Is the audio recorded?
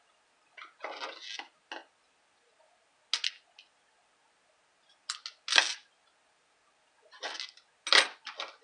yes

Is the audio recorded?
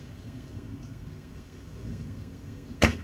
no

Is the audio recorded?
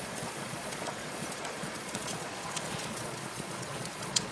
no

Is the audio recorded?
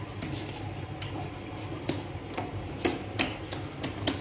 yes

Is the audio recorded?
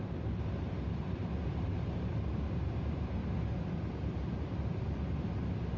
yes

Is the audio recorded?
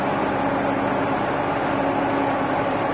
yes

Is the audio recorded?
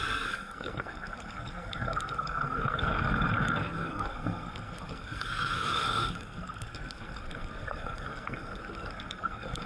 no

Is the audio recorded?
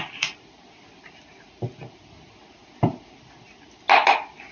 yes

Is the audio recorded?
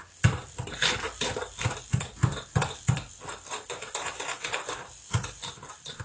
yes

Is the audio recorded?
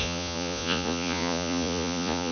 no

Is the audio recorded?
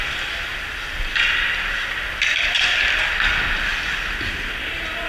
yes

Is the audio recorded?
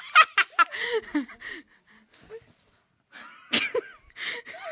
yes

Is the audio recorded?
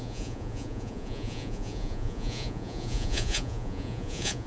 no